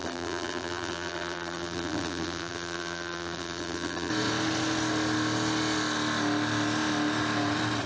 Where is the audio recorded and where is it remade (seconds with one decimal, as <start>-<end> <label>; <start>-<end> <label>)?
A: 0.0-4.1 remade; 4.1-7.9 recorded